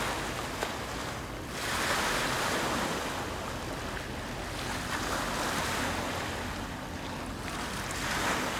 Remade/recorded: recorded